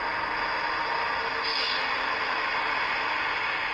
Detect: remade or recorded recorded